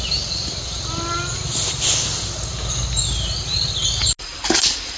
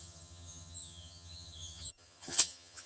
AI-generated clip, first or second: second